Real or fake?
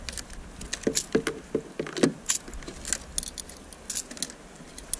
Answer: real